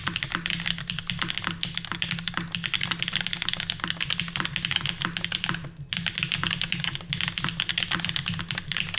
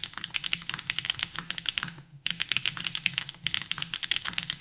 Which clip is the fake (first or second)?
second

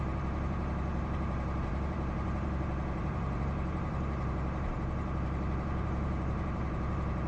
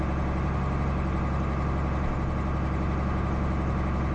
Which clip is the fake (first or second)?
first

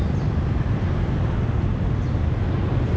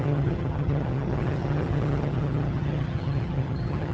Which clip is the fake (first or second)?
second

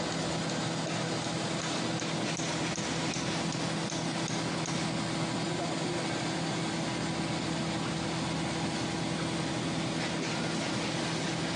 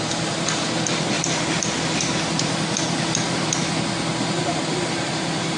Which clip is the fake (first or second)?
second